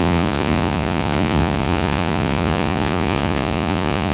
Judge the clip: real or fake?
fake